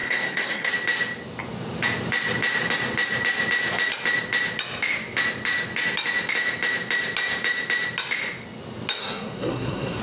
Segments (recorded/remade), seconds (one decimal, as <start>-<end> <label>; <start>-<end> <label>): 0.0-0.7 remade; 0.7-9.0 recorded; 9.0-10.0 remade